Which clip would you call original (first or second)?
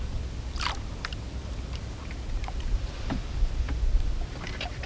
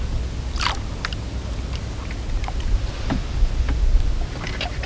second